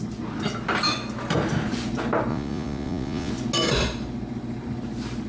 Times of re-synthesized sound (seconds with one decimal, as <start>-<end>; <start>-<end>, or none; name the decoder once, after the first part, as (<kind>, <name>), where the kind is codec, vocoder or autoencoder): 2.3-3.3 (vocoder, Vocos)